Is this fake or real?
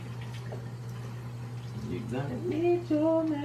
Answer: real